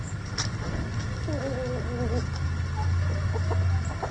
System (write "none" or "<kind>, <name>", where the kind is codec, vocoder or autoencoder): none